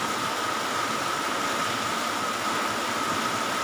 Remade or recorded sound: recorded